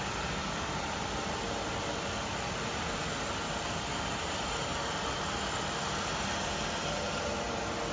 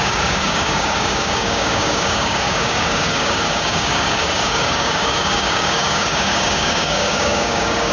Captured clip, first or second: first